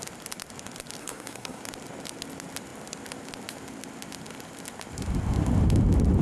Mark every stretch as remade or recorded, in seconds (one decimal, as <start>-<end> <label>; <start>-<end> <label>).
0.0-1.0 recorded; 1.0-1.6 remade; 1.6-6.2 recorded